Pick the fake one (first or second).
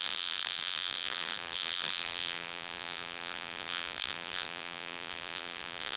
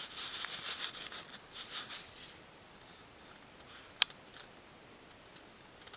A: first